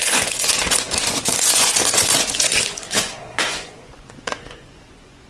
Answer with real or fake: fake